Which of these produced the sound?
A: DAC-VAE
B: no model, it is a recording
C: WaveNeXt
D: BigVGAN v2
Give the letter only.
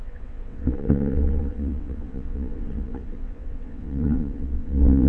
C